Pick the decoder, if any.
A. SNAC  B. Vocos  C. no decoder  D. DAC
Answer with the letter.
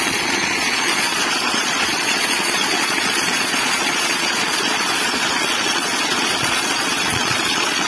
B